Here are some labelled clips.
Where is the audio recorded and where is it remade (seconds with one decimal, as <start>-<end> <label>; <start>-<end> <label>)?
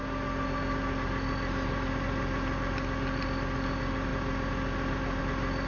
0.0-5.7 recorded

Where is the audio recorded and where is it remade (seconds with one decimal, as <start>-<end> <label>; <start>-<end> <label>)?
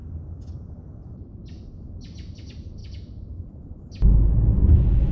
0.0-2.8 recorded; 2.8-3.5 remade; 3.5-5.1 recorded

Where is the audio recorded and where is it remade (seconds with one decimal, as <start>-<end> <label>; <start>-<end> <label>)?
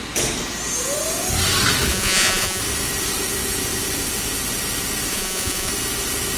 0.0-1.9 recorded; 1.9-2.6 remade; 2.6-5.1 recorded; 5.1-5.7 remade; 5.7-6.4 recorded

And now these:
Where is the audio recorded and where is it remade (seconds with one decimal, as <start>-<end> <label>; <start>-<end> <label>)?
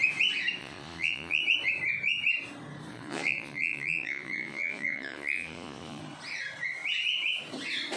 0.0-0.6 recorded; 0.6-1.4 remade; 1.4-2.9 recorded; 2.9-6.0 remade; 6.0-8.0 recorded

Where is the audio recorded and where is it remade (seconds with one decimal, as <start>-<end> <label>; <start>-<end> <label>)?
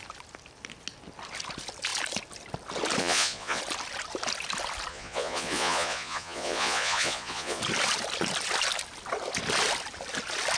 0.0-3.0 recorded; 3.0-3.6 remade; 3.6-4.9 recorded; 4.9-7.6 remade; 7.6-10.6 recorded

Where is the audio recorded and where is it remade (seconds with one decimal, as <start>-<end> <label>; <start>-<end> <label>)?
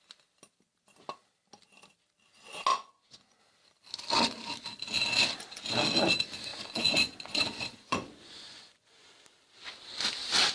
0.0-2.7 recorded; 2.7-3.4 remade; 3.4-6.5 recorded; 6.5-9.1 remade; 9.1-10.5 recorded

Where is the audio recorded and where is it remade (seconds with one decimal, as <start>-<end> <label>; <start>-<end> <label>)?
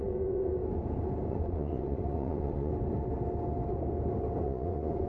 0.0-0.6 remade; 0.6-1.3 recorded; 1.3-2.7 remade; 2.7-4.4 recorded; 4.4-5.1 remade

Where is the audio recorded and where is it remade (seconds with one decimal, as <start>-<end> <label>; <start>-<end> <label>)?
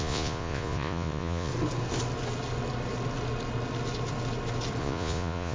0.0-1.5 remade; 1.5-4.8 recorded; 4.8-5.5 remade